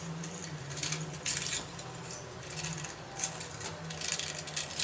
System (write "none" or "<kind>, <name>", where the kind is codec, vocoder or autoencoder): none